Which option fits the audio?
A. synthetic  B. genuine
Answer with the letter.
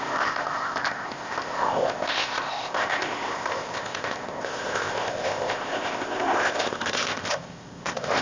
A